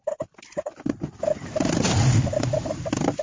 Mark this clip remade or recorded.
recorded